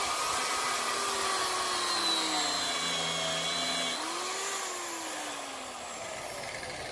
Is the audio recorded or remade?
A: recorded